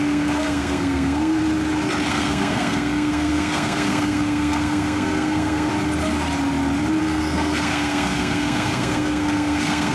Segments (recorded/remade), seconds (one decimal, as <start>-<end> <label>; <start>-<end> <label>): 0.0-1.4 remade; 1.4-2.1 recorded; 2.1-5.7 remade; 5.7-7.0 recorded; 7.0-9.9 remade